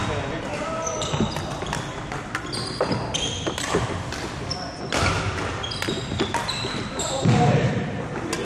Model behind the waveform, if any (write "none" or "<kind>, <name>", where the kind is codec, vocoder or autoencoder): none